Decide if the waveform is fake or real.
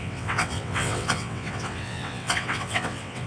fake